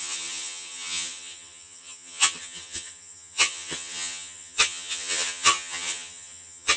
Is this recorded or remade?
remade